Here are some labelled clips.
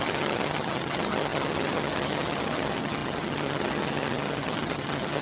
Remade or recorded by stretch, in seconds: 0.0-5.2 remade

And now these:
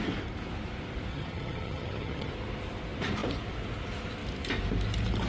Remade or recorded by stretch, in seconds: 0.0-1.1 recorded; 1.1-2.3 remade; 2.3-5.3 recorded

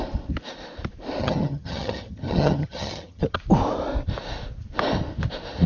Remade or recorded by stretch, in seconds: 0.0-1.2 recorded; 1.2-3.4 remade; 3.4-5.7 recorded

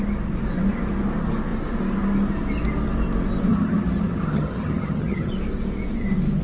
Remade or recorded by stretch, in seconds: 0.0-3.5 recorded; 3.5-5.3 remade; 5.3-6.4 recorded